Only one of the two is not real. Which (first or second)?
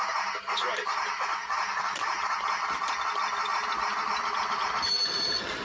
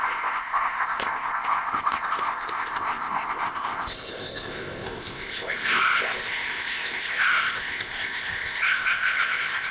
second